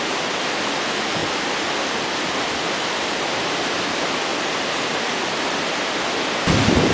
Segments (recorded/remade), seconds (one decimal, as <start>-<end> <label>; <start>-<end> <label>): 0.0-6.9 recorded